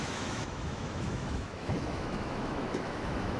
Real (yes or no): no